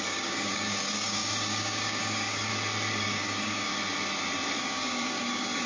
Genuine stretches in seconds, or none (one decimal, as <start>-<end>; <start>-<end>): 2.5-3.0; 3.7-4.6